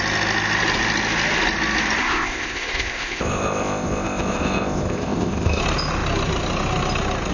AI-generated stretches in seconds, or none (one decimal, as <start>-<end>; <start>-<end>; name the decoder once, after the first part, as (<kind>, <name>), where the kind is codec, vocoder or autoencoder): 2.0-5.6 (codec, ZipCodec)